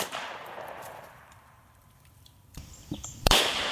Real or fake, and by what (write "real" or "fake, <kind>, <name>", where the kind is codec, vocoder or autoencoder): fake, vocoder, BigVGAN v2